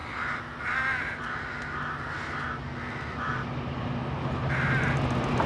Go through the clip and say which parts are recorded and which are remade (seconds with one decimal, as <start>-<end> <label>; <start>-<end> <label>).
0.0-5.5 recorded